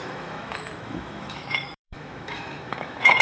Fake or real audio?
fake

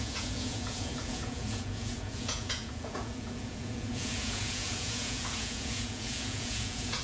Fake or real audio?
fake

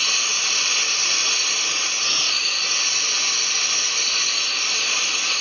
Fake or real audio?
real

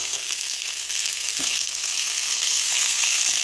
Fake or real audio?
fake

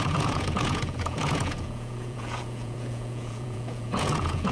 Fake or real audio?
fake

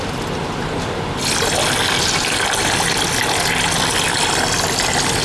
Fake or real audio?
real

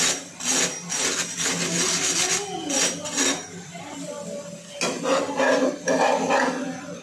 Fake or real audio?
real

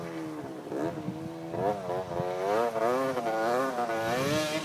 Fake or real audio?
real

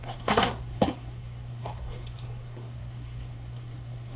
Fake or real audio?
fake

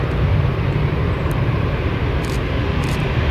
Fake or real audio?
fake